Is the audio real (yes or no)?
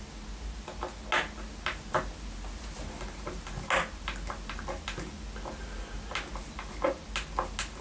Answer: yes